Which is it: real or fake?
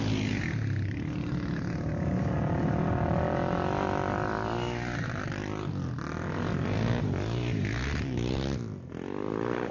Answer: real